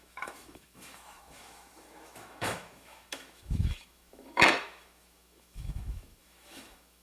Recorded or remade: remade